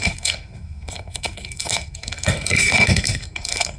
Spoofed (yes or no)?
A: yes